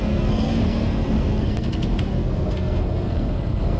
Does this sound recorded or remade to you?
remade